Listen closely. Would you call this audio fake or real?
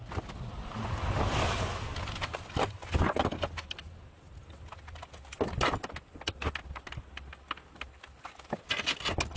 real